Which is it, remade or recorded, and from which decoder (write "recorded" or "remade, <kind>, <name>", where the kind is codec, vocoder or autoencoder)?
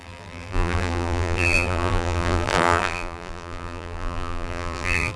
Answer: remade, vocoder, BigVGAN v2